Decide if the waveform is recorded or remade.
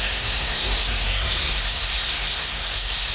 remade